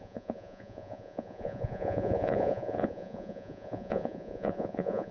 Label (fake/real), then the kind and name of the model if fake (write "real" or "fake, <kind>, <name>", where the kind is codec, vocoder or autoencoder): fake, vocoder, Vocos